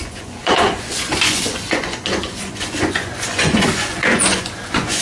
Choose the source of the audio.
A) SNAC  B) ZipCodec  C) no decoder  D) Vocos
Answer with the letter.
D